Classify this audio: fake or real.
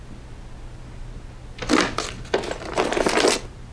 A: real